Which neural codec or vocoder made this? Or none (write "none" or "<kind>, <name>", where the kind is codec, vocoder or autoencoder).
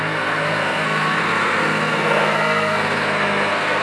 codec, SNAC